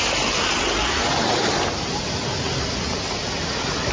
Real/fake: real